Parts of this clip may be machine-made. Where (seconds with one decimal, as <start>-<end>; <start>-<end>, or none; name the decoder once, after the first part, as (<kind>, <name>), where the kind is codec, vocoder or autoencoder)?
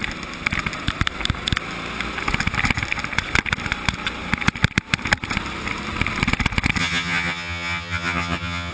6.8-8.7 (vocoder, HiFi-GAN)